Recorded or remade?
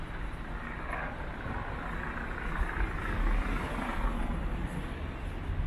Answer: recorded